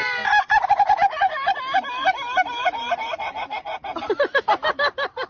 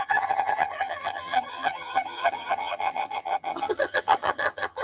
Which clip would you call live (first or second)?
first